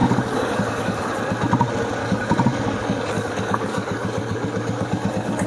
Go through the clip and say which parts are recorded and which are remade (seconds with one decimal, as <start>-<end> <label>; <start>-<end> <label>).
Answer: 0.0-1.1 remade; 1.1-2.0 recorded; 2.0-5.5 remade